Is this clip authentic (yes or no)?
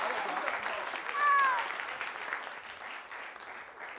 yes